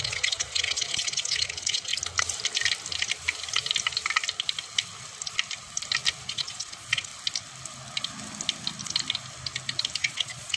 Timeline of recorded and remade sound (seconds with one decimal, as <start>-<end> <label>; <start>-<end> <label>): 0.0-1.9 remade; 1.9-6.3 recorded; 6.3-7.1 remade; 7.1-10.0 recorded; 10.0-10.6 remade